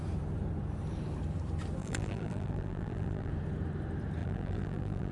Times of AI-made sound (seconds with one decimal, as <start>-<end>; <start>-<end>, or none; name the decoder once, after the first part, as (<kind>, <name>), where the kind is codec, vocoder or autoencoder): 1.8-3.3 (vocoder, BigVGAN v2); 4.2-5.1